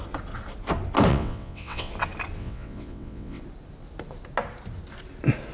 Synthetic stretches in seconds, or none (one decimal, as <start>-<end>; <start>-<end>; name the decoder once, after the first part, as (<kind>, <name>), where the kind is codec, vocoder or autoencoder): 1.1-1.9 (vocoder, WaveNeXt); 2.4-3.4